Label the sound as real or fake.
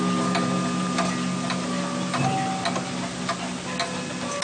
real